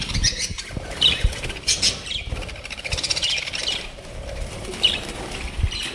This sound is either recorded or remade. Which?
remade